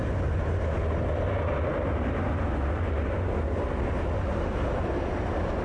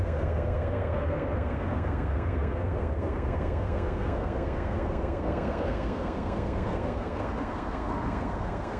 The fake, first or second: second